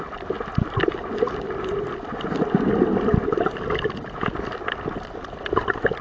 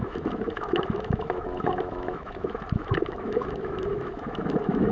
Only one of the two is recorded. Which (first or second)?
first